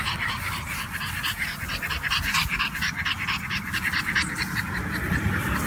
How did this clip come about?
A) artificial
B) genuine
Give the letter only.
B